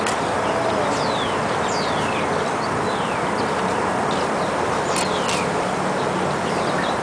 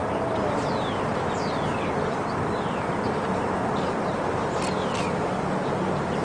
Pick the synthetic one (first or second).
second